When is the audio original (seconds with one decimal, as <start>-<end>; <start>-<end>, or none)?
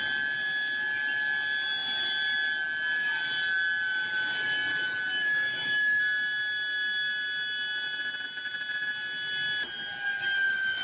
0.0-4.7; 6.0-10.8